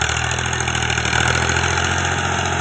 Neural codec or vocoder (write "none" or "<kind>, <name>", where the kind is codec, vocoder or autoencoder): none